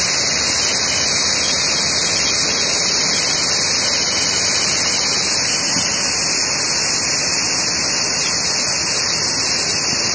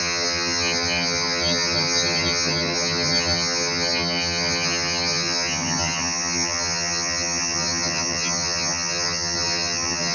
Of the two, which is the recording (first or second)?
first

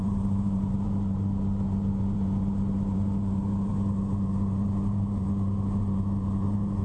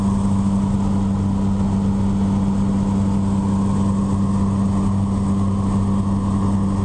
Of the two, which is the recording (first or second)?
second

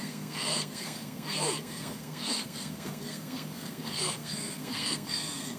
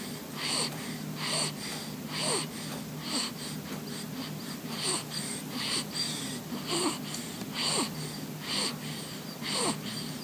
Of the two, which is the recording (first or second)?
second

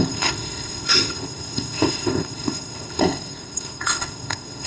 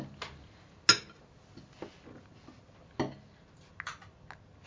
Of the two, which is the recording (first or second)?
second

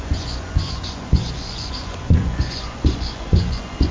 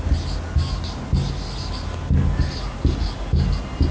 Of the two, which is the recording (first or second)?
second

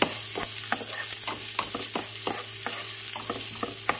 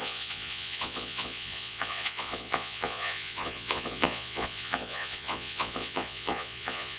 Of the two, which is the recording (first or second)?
first